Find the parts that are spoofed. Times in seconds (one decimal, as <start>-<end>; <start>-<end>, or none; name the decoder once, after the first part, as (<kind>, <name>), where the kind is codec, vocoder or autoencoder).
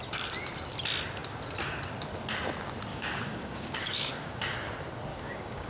2.9-4.4 (codec, DAC); 5.1-5.7